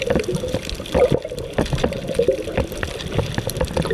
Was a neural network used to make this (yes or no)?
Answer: no